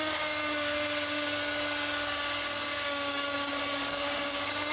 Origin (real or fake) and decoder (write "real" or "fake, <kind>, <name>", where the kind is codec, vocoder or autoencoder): fake, codec, DAC